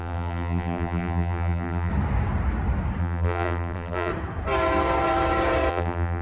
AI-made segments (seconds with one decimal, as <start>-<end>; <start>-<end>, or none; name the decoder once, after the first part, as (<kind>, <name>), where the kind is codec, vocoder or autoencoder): 0.0-1.9 (vocoder, BigVGAN v2); 3.0-4.1; 5.7-6.2